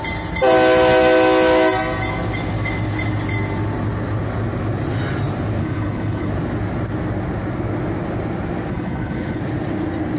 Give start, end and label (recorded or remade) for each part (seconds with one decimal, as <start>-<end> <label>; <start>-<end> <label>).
0.0-5.6 recorded; 5.6-6.3 remade; 6.3-8.7 recorded; 8.7-9.4 remade; 9.4-10.2 recorded